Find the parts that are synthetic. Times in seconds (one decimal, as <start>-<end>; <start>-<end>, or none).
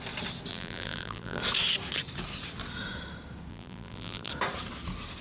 0.5-1.4; 3.5-4.3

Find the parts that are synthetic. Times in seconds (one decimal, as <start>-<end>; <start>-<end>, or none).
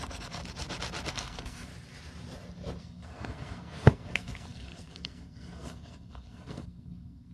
0.0-0.4; 1.1-1.7; 2.8-7.3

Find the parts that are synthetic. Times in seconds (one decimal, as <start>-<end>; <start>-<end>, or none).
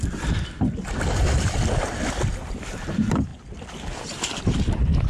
none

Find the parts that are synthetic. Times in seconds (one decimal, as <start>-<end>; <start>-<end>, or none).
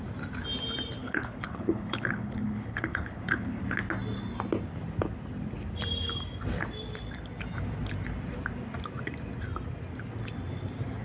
1.0-3.6